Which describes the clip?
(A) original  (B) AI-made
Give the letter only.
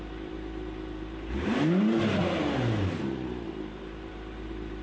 B